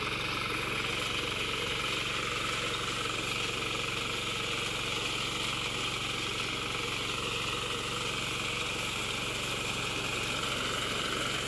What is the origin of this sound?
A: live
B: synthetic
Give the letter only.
A